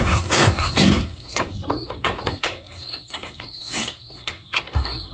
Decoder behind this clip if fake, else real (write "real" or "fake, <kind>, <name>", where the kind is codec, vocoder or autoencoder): fake, codec, SNAC